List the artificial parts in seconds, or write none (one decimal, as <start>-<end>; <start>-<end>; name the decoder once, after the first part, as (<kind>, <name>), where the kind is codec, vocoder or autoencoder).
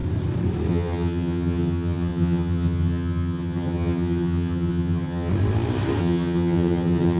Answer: 0.7-5.3 (vocoder, HiFi-GAN); 6.0-7.2